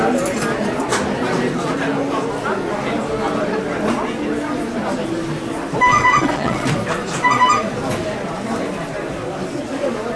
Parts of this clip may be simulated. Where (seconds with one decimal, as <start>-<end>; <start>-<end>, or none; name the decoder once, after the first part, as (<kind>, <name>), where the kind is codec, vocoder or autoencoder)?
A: 5.9-6.7 (vocoder, WaveNeXt)